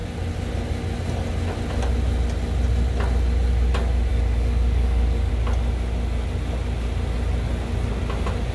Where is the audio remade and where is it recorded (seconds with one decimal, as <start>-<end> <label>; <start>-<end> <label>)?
0.0-4.1 recorded; 4.1-5.3 remade; 5.3-8.5 recorded